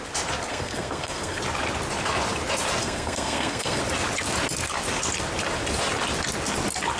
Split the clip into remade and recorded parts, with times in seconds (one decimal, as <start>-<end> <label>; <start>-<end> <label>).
0.0-0.5 recorded; 0.5-1.4 remade; 1.4-2.8 recorded; 2.8-3.8 remade; 3.8-7.0 recorded